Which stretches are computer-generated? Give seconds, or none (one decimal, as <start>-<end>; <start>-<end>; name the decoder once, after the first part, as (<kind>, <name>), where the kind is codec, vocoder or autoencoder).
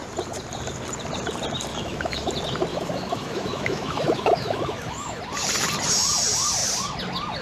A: 1.7-2.3 (autoencoder, DAC-VAE); 2.7-5.2